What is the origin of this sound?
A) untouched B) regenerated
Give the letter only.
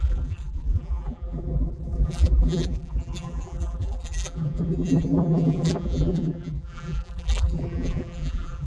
B